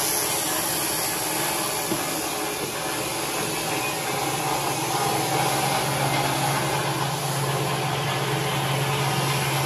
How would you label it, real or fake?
real